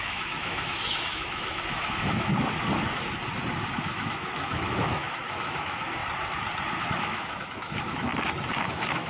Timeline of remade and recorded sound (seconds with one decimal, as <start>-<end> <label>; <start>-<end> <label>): 0.0-2.3 remade; 2.3-3.7 recorded; 3.7-6.0 remade; 6.0-6.8 recorded; 6.8-8.1 remade; 8.1-8.7 recorded; 8.7-9.1 remade